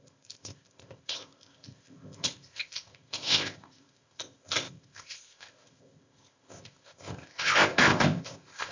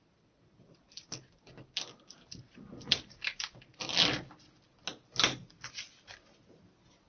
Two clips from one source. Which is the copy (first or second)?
first